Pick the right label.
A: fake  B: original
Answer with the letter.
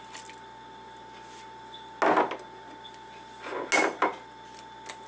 B